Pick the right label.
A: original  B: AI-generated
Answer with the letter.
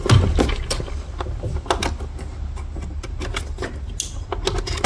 A